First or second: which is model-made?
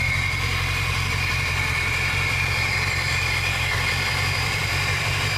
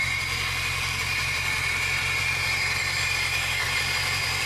first